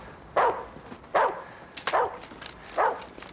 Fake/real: real